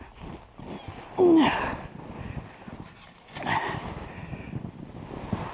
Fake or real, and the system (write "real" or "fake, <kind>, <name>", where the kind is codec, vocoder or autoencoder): real